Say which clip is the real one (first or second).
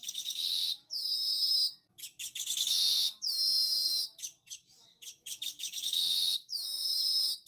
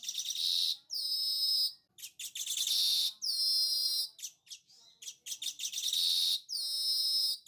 second